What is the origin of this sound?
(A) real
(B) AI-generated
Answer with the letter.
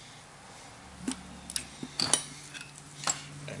A